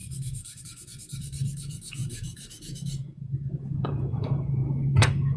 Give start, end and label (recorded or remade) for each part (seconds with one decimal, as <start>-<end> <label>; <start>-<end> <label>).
0.0-5.4 remade